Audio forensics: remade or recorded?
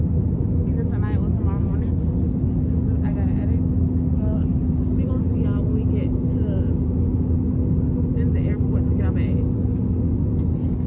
recorded